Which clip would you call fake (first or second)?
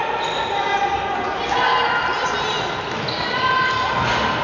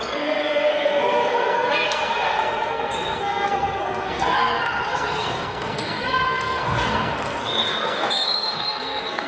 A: second